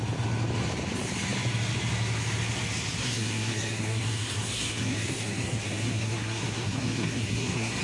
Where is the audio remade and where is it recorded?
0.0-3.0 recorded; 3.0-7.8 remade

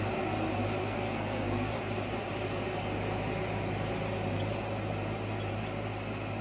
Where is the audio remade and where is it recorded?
0.0-0.8 recorded; 0.8-1.8 remade; 1.8-6.4 recorded

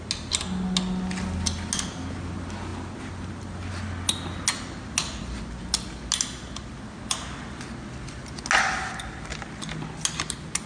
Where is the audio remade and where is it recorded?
0.0-10.7 recorded